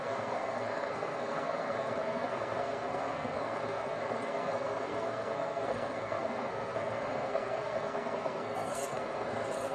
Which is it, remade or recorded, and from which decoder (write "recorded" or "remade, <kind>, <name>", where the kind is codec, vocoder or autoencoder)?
remade, codec, SNAC